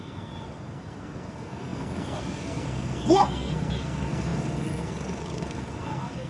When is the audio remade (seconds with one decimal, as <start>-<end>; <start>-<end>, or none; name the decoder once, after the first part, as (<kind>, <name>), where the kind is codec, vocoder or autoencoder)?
0.0-6.3 (codec, SNAC)